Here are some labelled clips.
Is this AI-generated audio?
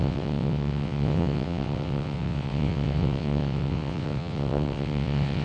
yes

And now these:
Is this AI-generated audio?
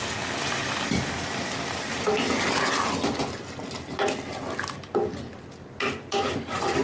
no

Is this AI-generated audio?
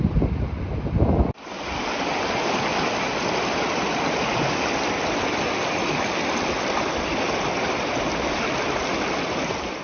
no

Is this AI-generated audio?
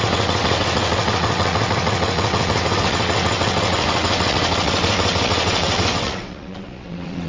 yes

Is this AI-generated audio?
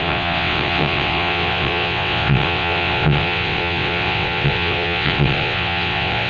yes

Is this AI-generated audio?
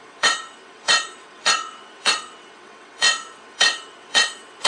yes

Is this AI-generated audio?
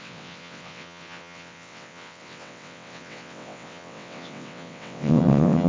yes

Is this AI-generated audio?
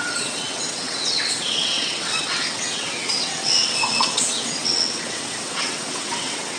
yes